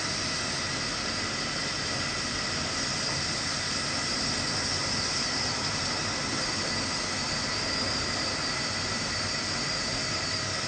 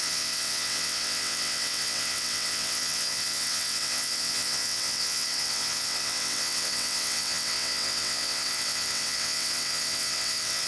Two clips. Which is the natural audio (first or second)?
first